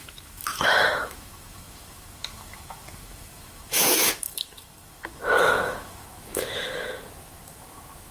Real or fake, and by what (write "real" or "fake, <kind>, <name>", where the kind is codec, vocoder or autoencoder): fake, autoencoder, DAC-VAE